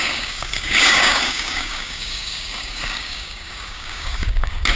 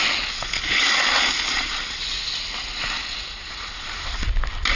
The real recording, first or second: second